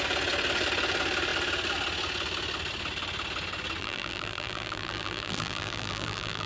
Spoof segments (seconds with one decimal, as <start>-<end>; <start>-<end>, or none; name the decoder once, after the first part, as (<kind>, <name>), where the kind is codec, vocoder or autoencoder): 3.8-6.5 (vocoder, BigVGAN v2)